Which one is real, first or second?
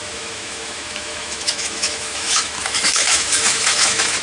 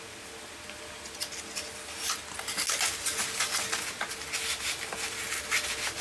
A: second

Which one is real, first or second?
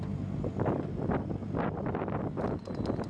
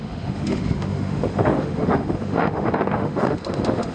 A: first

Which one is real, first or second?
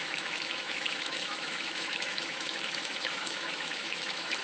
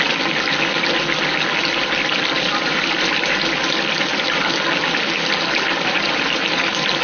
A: second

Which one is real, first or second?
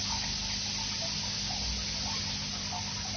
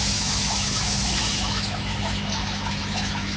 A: first